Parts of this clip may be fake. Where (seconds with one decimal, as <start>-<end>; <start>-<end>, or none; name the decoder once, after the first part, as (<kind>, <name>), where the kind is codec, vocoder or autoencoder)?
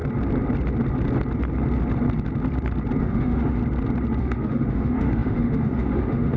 3.0-3.6 (autoencoder, DAC-VAE); 4.2-6.4